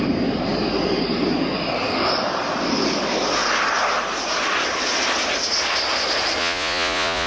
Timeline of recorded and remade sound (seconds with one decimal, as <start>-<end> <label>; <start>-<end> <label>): 0.0-6.4 recorded; 6.4-7.3 remade